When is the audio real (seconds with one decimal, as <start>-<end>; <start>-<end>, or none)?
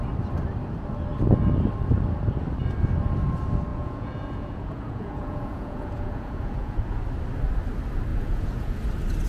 0.0-3.7; 7.0-8.1; 8.8-9.3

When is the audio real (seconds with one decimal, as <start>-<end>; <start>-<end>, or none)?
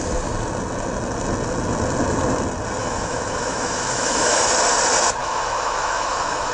0.0-2.8; 4.5-5.2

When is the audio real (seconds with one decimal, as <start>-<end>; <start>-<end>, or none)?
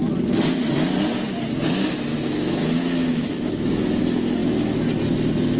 0.0-2.1; 4.0-5.6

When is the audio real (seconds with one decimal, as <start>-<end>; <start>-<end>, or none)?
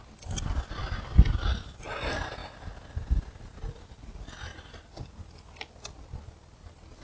0.0-7.0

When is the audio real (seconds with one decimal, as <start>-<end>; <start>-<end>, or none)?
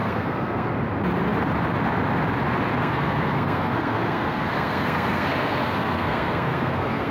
0.7-2.8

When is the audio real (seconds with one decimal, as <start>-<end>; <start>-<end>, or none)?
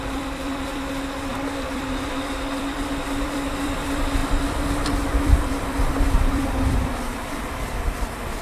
none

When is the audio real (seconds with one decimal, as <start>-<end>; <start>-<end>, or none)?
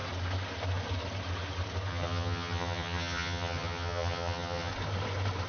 0.0-1.9; 4.7-5.5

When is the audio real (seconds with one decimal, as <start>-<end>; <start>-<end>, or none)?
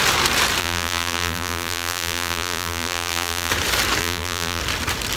0.0-0.6; 3.5-4.0; 4.6-5.2